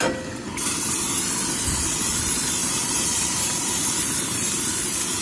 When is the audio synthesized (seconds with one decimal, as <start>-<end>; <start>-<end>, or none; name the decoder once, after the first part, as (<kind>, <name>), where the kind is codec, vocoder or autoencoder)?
2.6-3.9 (vocoder, BigVGAN v2)